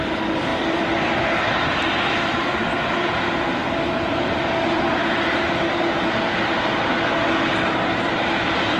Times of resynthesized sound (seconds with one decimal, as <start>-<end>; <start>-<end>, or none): 0.5-2.8